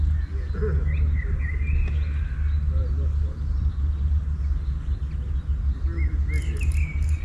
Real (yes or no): yes